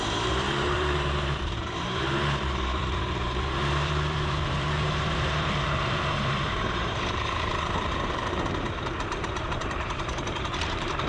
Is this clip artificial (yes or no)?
yes